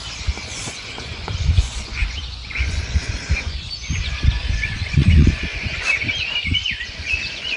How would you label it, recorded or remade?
remade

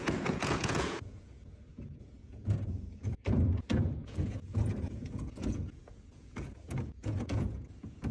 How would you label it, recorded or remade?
remade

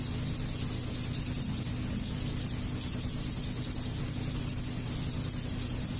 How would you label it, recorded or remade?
recorded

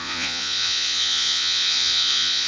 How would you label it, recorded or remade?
remade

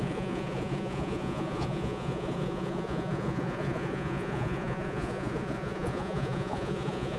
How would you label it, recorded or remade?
remade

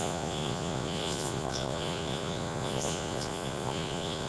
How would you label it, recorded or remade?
remade